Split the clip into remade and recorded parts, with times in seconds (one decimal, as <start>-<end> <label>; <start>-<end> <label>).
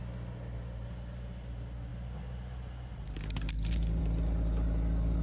0.0-5.2 recorded